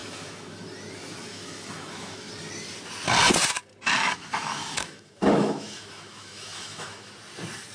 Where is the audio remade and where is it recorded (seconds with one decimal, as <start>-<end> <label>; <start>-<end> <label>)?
0.0-0.6 remade; 0.6-1.3 recorded; 1.3-2.3 remade; 2.3-4.0 recorded; 4.0-7.1 remade; 7.1-7.7 recorded

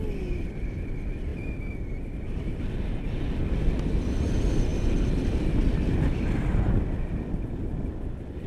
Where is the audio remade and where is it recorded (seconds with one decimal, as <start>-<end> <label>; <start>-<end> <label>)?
0.0-8.5 recorded

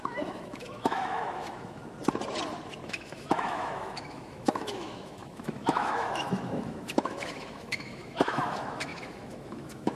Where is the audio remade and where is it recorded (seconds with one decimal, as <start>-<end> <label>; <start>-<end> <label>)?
0.0-1.8 remade; 1.8-2.8 recorded; 2.8-9.9 remade

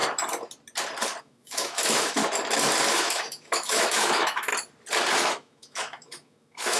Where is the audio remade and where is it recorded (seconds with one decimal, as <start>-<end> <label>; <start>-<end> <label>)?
0.0-1.2 recorded; 1.2-2.2 remade; 2.2-2.9 recorded; 2.9-4.5 remade; 4.5-5.3 recorded; 5.3-6.8 remade

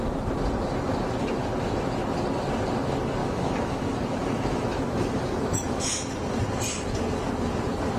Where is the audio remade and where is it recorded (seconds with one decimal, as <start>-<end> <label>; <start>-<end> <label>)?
0.0-3.2 recorded; 3.2-5.8 remade; 5.8-8.0 recorded